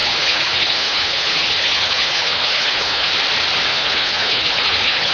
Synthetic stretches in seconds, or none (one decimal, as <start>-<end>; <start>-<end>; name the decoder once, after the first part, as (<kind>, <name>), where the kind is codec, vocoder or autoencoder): 0.0-3.1 (codec, HILCodec); 3.7-5.1